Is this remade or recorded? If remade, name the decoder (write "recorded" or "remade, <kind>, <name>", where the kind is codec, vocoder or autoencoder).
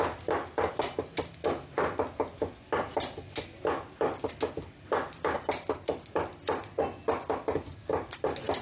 recorded